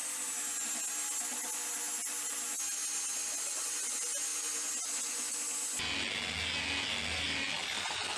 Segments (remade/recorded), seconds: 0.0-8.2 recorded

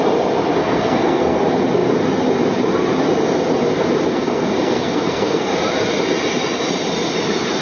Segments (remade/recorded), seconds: 0.0-0.6 recorded; 0.6-1.4 remade; 1.4-4.1 recorded; 4.1-5.5 remade; 5.5-7.6 recorded

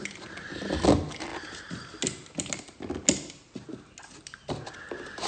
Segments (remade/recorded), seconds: 0.0-5.3 recorded

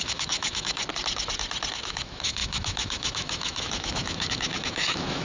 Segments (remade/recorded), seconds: 0.0-0.8 remade; 0.8-1.7 recorded; 1.7-5.2 remade

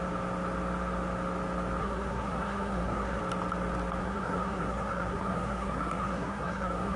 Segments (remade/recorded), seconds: 0.0-1.8 recorded; 1.8-3.2 remade; 3.2-4.0 recorded; 4.0-7.0 remade

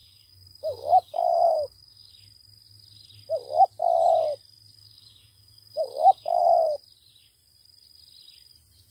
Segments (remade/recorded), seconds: 0.0-2.1 remade; 2.1-4.8 recorded; 4.8-6.4 remade; 6.4-8.9 recorded